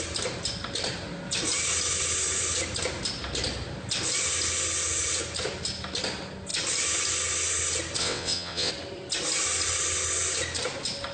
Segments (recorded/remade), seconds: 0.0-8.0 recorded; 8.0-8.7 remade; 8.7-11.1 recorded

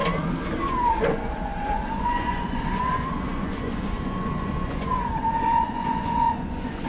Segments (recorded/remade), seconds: 0.0-0.6 recorded; 0.6-6.9 remade

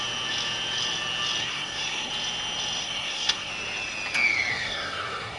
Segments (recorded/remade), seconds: 0.0-1.4 recorded; 1.4-2.1 remade; 2.1-2.8 recorded; 2.8-3.5 remade; 3.5-4.5 recorded; 4.5-5.4 remade

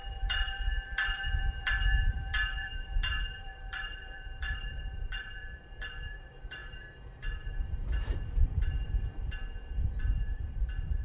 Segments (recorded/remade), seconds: 0.0-11.0 remade

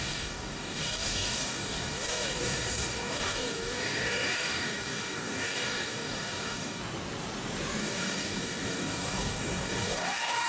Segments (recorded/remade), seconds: 0.0-6.8 remade; 6.8-7.8 recorded; 7.8-10.5 remade

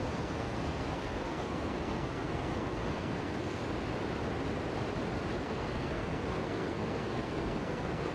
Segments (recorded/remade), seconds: 0.0-3.6 remade; 3.6-5.4 recorded; 5.4-8.1 remade

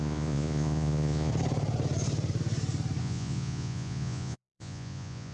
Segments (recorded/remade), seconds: 0.0-1.3 remade; 1.3-3.0 recorded; 3.0-5.3 remade